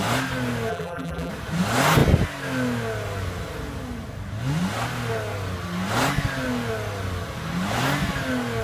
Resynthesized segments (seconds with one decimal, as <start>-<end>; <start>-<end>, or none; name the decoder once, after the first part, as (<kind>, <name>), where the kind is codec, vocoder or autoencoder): 0.7-1.3 (vocoder, BigVGAN v2)

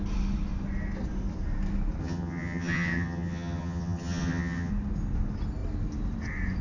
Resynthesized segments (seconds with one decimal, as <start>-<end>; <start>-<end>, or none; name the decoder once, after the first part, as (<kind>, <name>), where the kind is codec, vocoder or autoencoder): 2.0-4.7 (vocoder, HiFi-GAN)

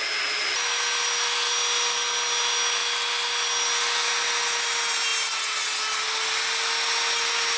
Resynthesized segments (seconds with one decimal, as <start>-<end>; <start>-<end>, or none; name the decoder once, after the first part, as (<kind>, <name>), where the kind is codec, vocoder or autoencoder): none

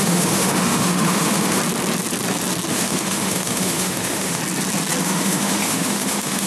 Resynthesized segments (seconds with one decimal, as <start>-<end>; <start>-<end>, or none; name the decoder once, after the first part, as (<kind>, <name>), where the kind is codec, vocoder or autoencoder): 0.0-1.6 (autoencoder, DAC-VAE); 2.7-4.4; 5.0-6.5

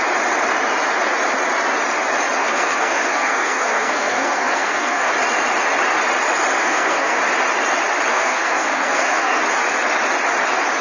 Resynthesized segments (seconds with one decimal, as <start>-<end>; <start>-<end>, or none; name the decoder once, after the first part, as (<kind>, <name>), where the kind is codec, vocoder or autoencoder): 2.4-5.1 (codec, SNAC); 6.6-7.2; 8.1-9.4

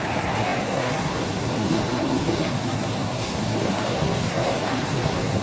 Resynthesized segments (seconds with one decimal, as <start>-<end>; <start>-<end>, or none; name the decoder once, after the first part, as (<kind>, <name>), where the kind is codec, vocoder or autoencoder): 0.0-5.4 (codec, SNAC)

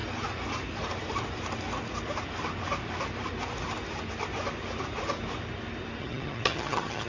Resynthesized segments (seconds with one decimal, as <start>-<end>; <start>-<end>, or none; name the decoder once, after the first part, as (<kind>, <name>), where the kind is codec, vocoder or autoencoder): 6.0-7.1 (vocoder, HiFi-GAN)